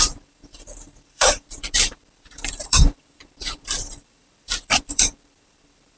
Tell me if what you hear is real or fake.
fake